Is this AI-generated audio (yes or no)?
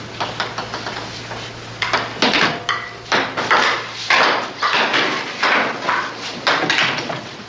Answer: no